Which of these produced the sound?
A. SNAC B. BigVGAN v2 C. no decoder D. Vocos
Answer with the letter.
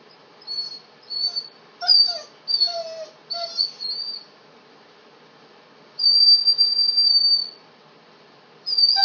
C